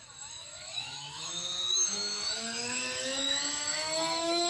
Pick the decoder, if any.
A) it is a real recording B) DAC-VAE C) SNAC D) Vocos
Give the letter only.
B